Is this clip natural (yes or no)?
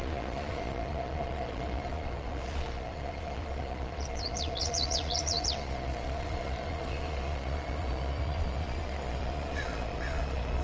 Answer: no